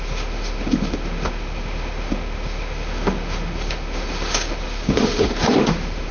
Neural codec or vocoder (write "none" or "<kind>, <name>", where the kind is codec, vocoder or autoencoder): autoencoder, DAC-VAE